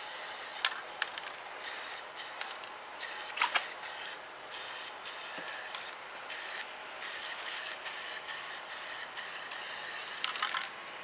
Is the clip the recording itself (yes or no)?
yes